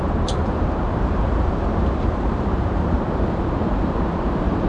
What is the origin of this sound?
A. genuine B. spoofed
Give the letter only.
B